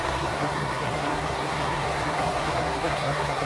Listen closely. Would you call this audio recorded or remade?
remade